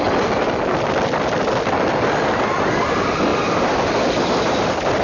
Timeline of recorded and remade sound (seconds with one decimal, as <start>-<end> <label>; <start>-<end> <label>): 0.0-5.0 recorded